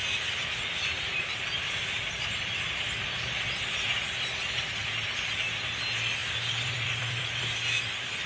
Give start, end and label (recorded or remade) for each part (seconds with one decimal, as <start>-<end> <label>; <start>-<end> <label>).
0.0-2.2 remade; 2.2-4.8 recorded; 4.8-5.5 remade; 5.5-6.2 recorded; 6.2-7.4 remade; 7.4-8.3 recorded